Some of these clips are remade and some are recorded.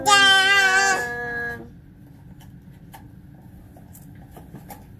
recorded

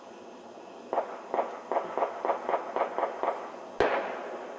recorded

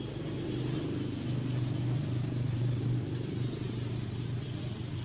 recorded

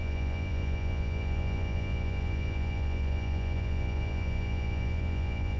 remade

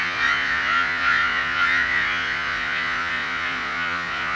remade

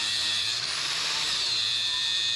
remade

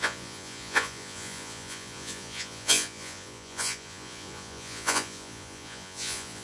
remade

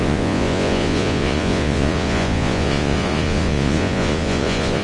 remade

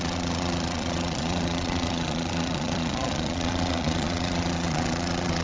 remade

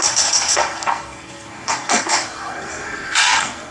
remade